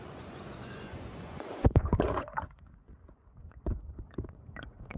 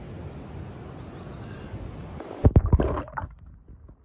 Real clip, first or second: second